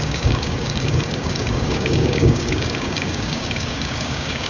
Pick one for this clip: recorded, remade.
remade